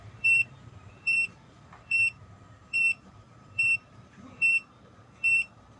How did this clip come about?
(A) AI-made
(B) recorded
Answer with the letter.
A